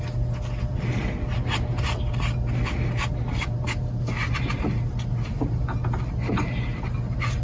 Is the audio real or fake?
real